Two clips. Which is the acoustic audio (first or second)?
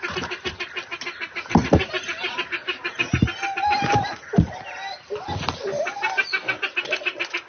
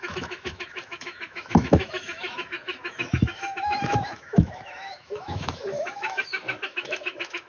first